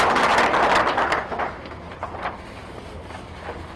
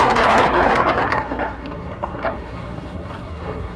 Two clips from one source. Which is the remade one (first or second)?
second